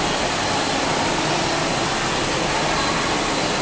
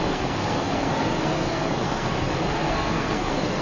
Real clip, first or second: first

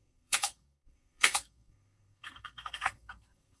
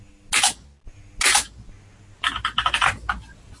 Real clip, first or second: second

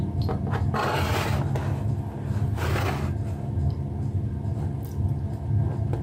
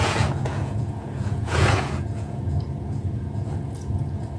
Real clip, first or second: first